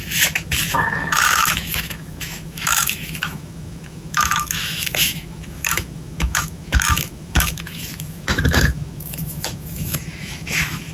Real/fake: fake